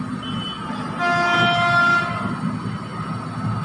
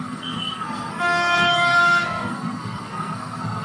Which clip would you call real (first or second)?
first